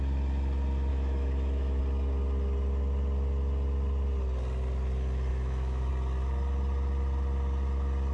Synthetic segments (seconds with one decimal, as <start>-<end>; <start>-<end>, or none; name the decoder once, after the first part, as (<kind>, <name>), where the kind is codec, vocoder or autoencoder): 0.9-1.8 (autoencoder, DAC-VAE); 5.3-5.9